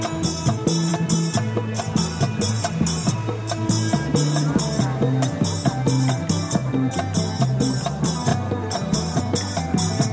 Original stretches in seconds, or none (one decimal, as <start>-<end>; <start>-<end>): 0.0-8.3; 9.2-10.1